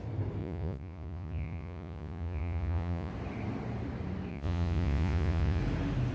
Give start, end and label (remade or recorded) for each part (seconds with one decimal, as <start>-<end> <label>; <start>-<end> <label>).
0.0-0.4 recorded; 0.4-3.1 remade; 3.1-4.3 recorded; 4.3-5.6 remade; 5.6-6.1 recorded